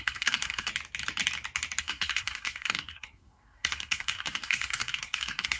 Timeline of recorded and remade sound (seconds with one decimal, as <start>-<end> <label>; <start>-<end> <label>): 0.0-0.7 remade; 0.7-1.8 recorded; 1.8-5.6 remade